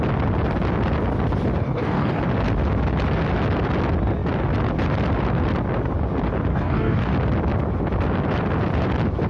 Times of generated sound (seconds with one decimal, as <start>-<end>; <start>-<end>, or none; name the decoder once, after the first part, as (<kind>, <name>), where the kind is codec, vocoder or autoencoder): 1.6-2.2 (codec, DAC); 6.5-7.1